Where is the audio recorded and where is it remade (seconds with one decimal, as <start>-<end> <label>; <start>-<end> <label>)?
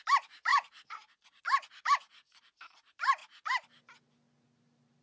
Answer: 0.0-0.5 recorded; 0.5-1.4 remade; 1.4-5.0 recorded